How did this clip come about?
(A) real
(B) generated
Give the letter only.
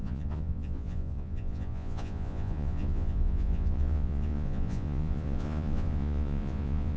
B